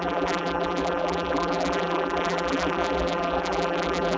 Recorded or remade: remade